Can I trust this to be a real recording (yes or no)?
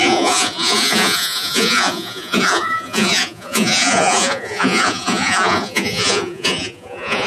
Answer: no